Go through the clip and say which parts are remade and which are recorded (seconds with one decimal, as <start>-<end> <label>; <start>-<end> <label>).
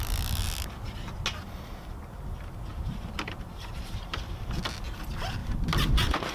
0.0-2.7 recorded; 2.7-4.4 remade; 4.4-5.4 recorded; 5.4-6.3 remade